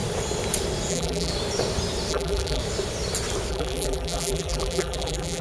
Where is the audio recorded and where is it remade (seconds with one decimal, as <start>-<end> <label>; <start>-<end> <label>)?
0.0-0.9 recorded; 0.9-1.3 remade; 1.3-2.1 recorded; 2.1-2.6 remade; 2.6-3.5 recorded; 3.5-5.4 remade